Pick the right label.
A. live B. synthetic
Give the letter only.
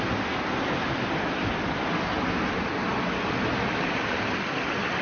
A